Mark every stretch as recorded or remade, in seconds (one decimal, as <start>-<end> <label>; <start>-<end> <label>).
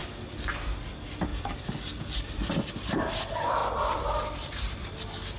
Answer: 0.0-1.3 recorded; 1.3-2.7 remade; 2.7-3.6 recorded; 3.6-4.3 remade; 4.3-5.4 recorded